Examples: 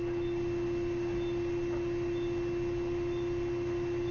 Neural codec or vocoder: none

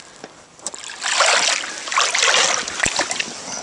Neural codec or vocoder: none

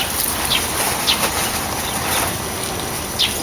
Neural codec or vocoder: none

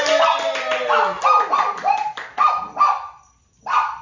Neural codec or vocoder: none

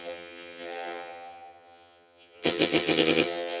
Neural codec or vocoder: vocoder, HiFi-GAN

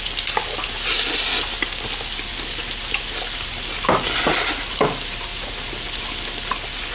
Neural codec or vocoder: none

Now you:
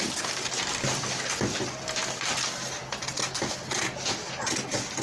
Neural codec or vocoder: none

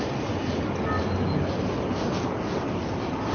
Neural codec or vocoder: none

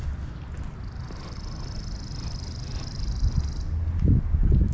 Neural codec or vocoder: none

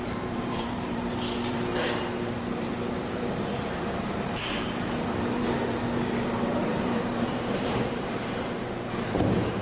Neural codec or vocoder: vocoder, BigVGAN v2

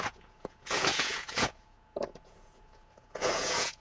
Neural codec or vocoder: vocoder, Vocos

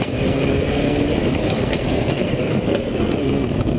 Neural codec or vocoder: codec, SNAC